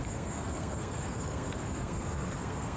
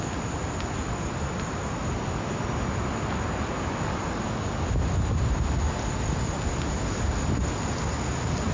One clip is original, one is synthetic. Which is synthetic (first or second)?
first